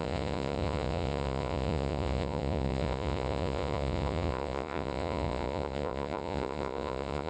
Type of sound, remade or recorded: remade